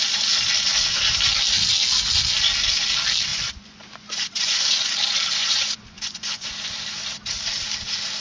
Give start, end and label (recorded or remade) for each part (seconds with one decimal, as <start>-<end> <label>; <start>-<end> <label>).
0.0-3.3 recorded; 3.3-4.9 remade; 4.9-5.4 recorded; 5.4-6.5 remade; 6.5-8.2 recorded